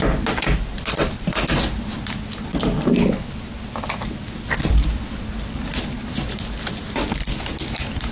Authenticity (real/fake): real